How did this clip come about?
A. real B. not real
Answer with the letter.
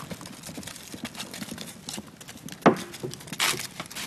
A